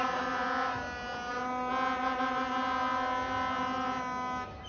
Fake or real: real